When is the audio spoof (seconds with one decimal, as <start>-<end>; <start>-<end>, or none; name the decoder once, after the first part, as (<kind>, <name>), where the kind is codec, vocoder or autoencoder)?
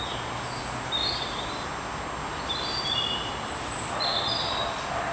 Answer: none